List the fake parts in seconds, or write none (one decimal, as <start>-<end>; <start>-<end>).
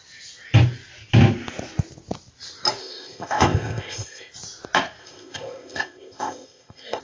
2.8-4.3; 5.0-7.0